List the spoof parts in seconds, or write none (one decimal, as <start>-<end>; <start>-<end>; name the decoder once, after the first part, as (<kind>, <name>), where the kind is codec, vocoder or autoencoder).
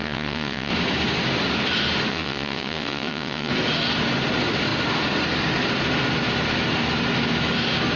0.0-0.7 (vocoder, WaveNeXt); 2.1-3.5